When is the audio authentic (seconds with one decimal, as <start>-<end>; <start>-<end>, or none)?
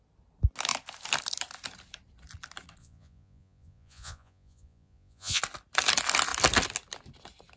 0.0-2.8; 5.4-7.6